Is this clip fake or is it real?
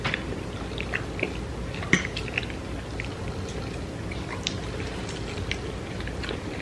real